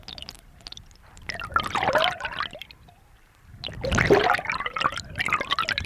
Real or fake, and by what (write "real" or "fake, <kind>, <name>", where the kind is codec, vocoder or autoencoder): fake, vocoder, BigVGAN v2